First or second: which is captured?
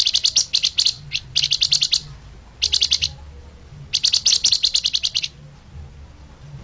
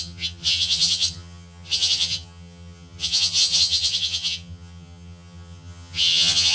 first